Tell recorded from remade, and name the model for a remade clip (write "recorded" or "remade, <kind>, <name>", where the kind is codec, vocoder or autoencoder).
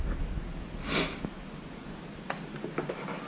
recorded